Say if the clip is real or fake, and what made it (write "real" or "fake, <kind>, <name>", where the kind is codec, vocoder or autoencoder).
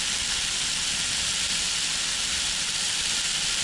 real